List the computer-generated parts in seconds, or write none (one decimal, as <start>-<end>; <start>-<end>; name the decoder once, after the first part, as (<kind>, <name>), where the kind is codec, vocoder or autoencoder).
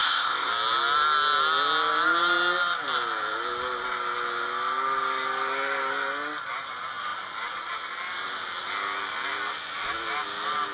0.0-0.5 (codec, ZipCodec)